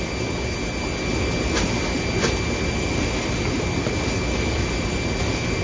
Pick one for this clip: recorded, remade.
recorded